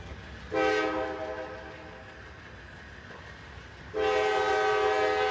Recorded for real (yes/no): yes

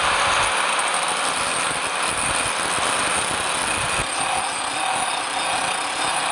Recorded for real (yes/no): yes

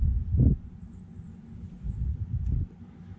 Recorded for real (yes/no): yes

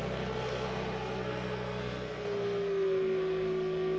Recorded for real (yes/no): no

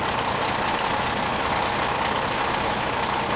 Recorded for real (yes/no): yes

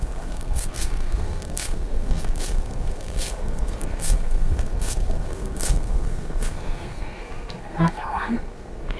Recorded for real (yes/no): no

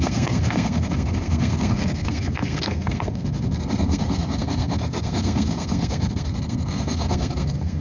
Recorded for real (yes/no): no